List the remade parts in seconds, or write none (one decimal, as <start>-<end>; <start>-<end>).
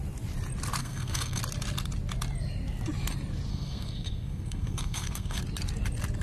0.8-1.4; 3.5-5.4